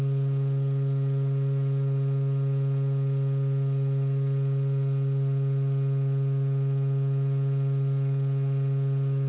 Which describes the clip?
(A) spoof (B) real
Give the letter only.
B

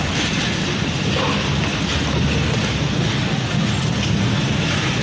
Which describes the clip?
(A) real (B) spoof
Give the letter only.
A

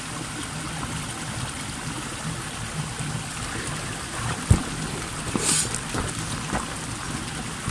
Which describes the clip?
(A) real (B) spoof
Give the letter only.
A